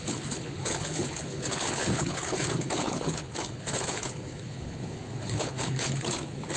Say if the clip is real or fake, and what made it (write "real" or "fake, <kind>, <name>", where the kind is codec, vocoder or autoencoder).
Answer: fake, codec, HILCodec